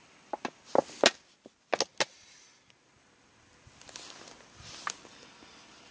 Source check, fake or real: real